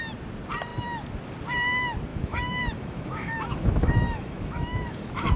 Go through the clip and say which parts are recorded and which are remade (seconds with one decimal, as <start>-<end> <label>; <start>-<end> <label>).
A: 0.0-2.1 recorded; 2.1-5.4 remade